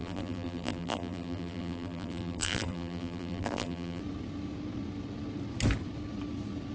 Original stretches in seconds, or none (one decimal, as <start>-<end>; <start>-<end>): 4.0-6.7